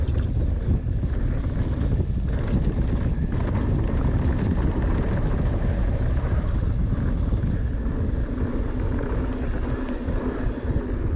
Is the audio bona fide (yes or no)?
yes